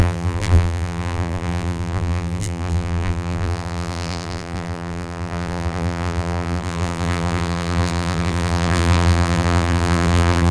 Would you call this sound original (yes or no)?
no